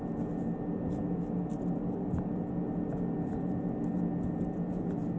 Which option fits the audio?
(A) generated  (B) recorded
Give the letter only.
B